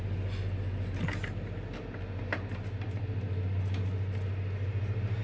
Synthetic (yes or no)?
no